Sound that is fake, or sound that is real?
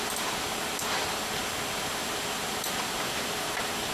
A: real